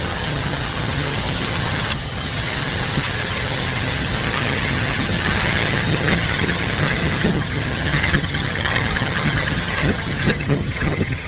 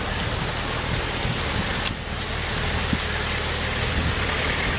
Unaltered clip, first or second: second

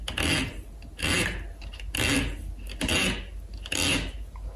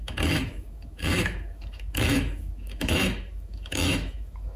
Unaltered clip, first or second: first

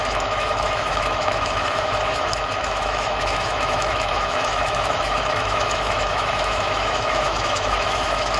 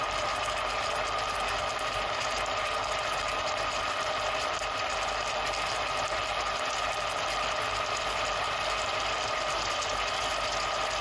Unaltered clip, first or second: second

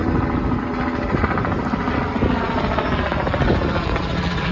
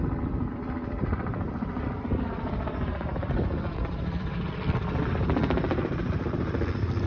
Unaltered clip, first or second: first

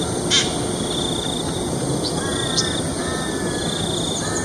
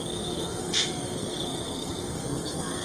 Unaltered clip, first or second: first